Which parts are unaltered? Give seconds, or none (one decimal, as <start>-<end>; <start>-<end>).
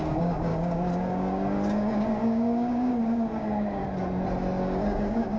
3.8-4.6